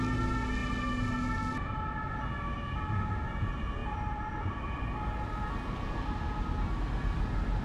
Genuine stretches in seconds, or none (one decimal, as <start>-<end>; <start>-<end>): 0.0-3.8; 4.8-7.6